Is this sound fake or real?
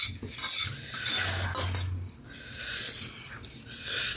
real